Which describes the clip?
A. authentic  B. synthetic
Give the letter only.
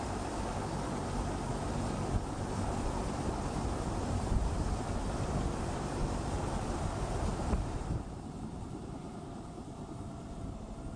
B